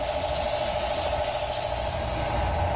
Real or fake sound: real